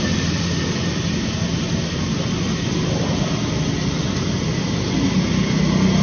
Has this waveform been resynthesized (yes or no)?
no